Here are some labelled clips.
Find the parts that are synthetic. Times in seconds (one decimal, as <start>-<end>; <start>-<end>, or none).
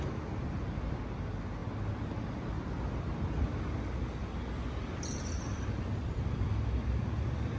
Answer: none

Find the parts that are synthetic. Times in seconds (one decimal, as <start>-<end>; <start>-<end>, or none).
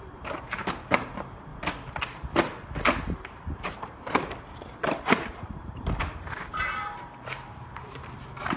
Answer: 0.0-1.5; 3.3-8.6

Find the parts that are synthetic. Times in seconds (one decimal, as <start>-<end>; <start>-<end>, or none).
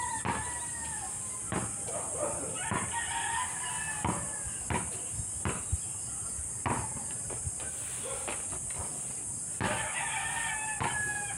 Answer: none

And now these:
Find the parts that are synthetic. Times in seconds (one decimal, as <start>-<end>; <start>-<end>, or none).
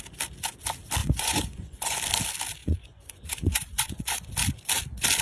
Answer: 1.0-2.0; 2.6-4.3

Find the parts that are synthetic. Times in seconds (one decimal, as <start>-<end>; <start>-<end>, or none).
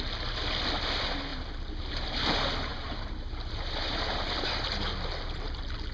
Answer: 2.7-4.7